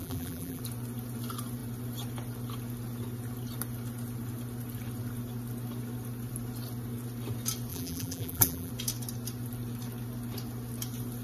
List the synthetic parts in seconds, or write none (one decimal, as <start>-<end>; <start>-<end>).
0.0-0.6; 7.7-8.7